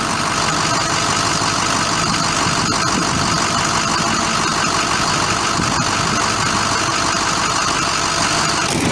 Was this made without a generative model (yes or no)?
yes